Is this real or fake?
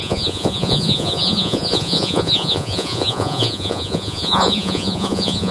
fake